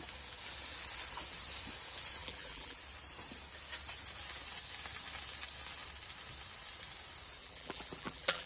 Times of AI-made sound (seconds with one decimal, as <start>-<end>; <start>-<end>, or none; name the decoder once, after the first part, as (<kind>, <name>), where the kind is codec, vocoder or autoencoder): 2.2-2.8 (vocoder, BigVGAN v2); 7.4-8.5